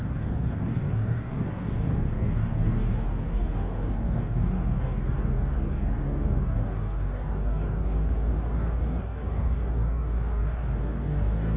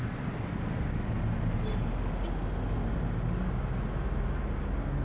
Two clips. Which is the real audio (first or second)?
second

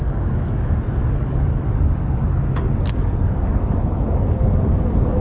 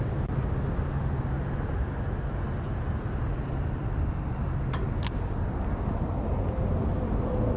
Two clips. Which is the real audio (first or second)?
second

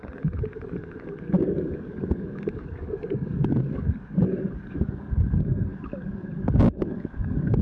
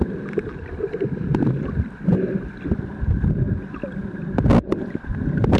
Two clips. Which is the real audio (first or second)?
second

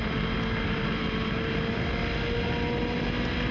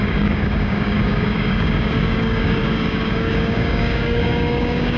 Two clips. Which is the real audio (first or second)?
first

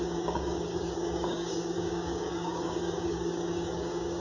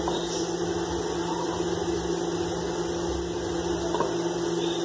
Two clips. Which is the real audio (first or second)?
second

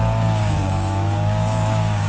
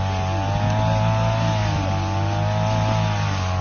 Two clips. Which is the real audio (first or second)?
second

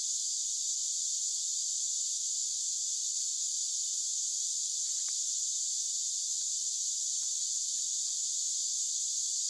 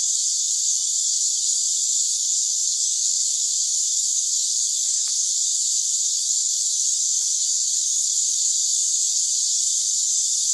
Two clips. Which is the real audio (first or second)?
first